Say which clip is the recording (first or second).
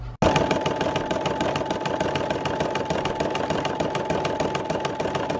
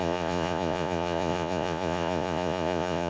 first